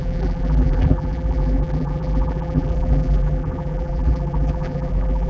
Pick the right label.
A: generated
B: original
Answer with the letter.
A